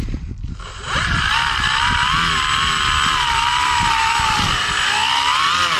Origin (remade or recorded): remade